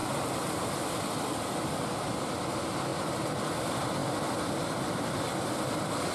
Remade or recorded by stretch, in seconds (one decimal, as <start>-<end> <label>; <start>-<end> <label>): 0.0-6.1 recorded